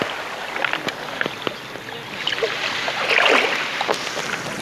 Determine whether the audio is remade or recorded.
recorded